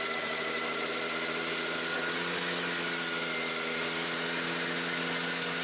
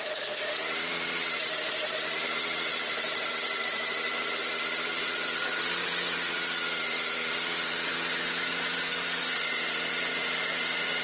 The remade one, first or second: second